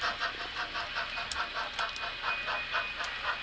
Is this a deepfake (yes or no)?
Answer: no